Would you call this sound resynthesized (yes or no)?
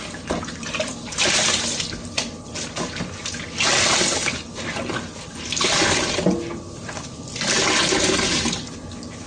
no